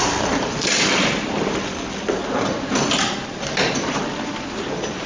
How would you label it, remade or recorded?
recorded